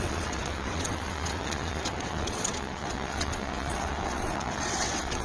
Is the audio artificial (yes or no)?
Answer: yes